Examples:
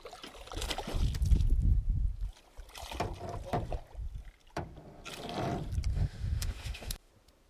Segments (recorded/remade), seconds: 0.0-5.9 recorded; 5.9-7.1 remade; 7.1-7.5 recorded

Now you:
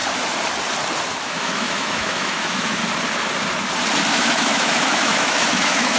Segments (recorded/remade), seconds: 0.0-1.2 recorded; 1.2-2.8 remade; 2.8-4.1 recorded; 4.1-6.0 remade

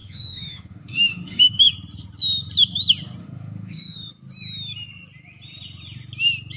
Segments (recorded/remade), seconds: 0.0-1.7 remade; 1.7-3.2 recorded; 3.2-4.1 remade; 4.1-6.6 recorded